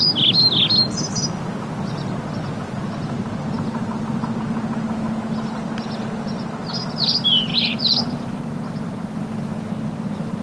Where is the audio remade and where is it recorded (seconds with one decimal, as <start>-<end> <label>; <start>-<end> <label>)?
0.0-7.5 recorded; 7.5-8.4 remade; 8.4-10.4 recorded